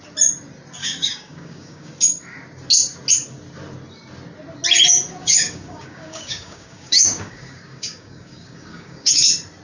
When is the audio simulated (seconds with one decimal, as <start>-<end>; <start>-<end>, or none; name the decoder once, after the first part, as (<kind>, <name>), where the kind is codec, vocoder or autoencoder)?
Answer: 0.8-1.9 (codec, DAC); 5.2-9.2